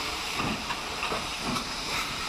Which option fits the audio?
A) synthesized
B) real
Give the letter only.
A